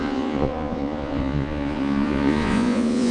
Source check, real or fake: fake